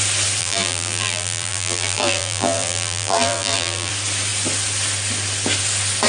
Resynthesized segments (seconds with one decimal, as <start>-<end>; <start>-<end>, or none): 0.4-3.9